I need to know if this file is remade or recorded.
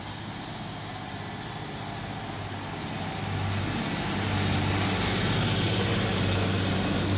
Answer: recorded